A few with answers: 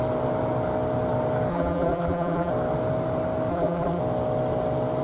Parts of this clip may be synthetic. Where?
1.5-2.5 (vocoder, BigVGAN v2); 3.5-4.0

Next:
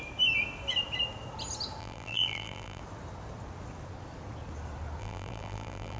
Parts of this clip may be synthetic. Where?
1.8-2.8 (vocoder, BigVGAN v2); 5.0-6.0

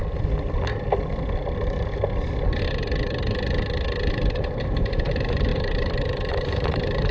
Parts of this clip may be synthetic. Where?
4.1-7.1 (vocoder, BigVGAN v2)

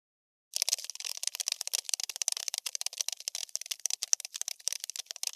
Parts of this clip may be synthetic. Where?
none